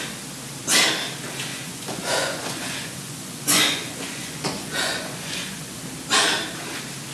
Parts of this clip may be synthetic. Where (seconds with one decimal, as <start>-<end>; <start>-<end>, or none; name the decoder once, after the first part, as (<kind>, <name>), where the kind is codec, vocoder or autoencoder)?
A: 1.5-5.8 (vocoder, Vocos)